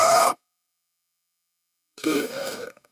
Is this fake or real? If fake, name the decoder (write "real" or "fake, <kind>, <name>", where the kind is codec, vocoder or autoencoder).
fake, codec, DAC